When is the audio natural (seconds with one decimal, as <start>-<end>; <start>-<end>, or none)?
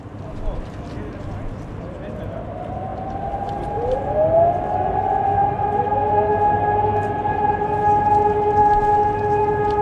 0.0-9.8